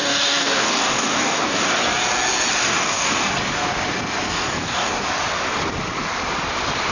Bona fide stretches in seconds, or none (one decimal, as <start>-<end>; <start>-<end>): 1.8-2.5; 3.3-4.3; 4.9-6.9